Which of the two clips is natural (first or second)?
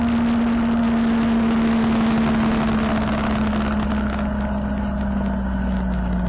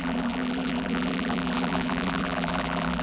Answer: first